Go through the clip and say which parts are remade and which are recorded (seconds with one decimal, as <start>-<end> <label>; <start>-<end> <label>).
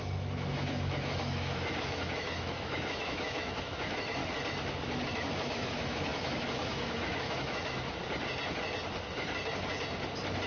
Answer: 0.0-4.2 remade; 4.2-5.1 recorded; 5.1-8.0 remade; 8.0-10.5 recorded